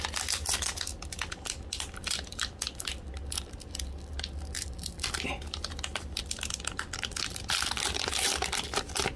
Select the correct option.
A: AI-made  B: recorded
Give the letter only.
B